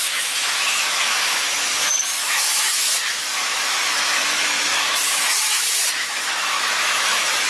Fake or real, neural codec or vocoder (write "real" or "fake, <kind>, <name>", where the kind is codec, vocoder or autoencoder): fake, autoencoder, DAC-VAE